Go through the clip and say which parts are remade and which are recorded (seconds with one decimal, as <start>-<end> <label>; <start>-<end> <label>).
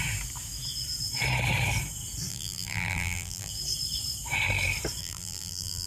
0.0-2.3 recorded; 2.3-3.5 remade; 3.5-5.0 recorded; 5.0-5.9 remade